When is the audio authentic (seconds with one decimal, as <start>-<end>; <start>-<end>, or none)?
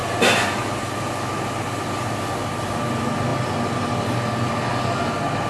1.1-5.5